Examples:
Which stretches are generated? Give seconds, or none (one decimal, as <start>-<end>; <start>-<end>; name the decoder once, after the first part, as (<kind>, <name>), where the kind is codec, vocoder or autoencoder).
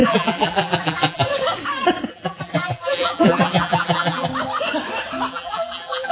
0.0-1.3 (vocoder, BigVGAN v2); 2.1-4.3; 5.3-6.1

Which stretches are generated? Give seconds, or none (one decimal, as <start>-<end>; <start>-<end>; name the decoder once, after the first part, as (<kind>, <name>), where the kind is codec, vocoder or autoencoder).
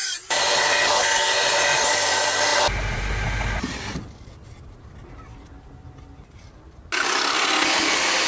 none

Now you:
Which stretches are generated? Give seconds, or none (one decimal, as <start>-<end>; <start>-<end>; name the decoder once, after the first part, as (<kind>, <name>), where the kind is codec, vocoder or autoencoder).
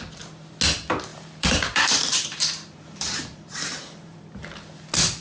1.1-4.2 (vocoder, BigVGAN v2)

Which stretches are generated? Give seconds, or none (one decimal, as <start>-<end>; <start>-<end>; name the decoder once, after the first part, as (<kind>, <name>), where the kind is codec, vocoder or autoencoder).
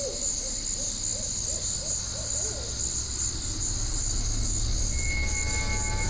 none